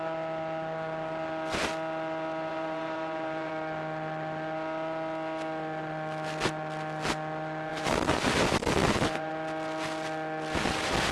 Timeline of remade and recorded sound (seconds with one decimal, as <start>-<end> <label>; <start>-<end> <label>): 0.0-2.5 recorded; 2.5-3.5 remade; 3.5-7.7 recorded; 7.7-8.3 remade; 8.3-8.8 recorded; 8.8-9.3 remade; 9.3-11.1 recorded